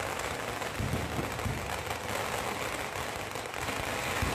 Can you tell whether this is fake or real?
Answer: real